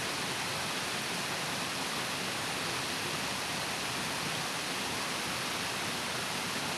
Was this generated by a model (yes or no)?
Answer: no